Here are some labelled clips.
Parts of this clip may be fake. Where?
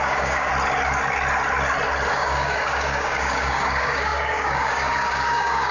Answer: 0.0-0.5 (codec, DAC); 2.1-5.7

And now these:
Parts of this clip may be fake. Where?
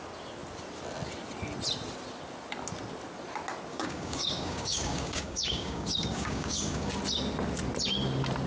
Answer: 3.7-6.9 (codec, DAC)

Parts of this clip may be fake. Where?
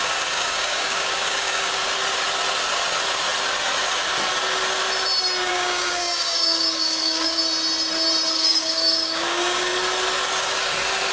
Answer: 0.0-1.8 (codec, DAC); 5.5-7.4; 8.3-9.7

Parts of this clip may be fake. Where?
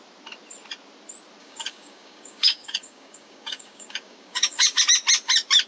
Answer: 1.4-4.8 (codec, DAC)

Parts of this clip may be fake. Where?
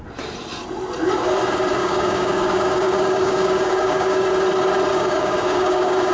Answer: 1.8-4.3 (codec, DAC); 4.9-6.1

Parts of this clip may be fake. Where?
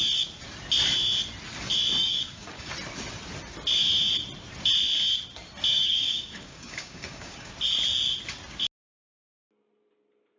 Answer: 2.0-2.7 (codec, DAC); 5.7-7.5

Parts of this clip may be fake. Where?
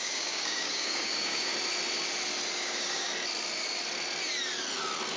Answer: 0.0-1.5 (codec, DAC); 2.5-3.1